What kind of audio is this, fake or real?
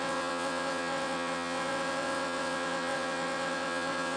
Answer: fake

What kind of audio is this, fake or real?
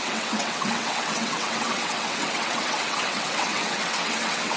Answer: fake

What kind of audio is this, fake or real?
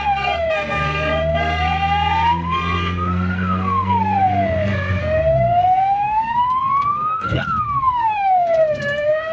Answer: fake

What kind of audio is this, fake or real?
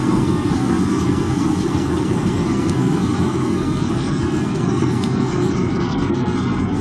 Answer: fake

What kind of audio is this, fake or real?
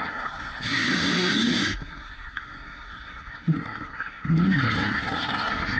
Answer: fake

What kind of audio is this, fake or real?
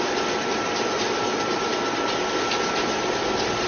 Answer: real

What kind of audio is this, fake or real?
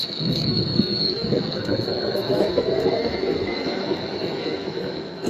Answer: fake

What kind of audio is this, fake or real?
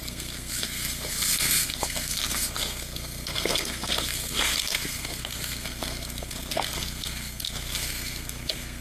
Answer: fake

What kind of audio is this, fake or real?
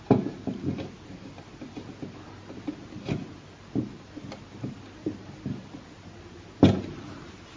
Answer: real